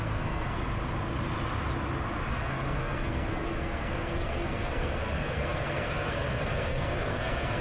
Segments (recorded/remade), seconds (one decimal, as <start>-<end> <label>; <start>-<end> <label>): 0.0-0.6 remade; 0.6-2.3 recorded; 2.3-7.6 remade